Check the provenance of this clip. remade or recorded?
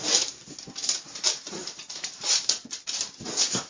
recorded